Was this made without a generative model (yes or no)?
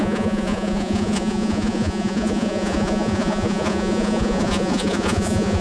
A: no